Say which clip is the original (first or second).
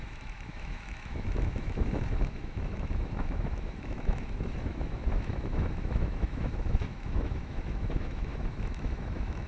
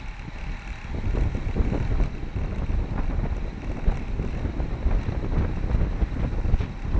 second